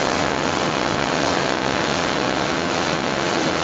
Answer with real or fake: fake